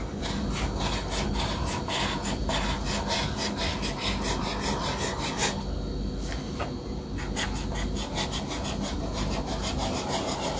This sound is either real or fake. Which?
real